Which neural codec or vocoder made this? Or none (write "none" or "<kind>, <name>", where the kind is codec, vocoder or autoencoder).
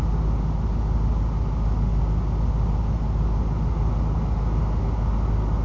none